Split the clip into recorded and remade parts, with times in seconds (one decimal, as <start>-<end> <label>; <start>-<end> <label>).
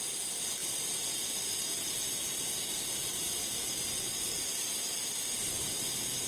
0.0-6.3 recorded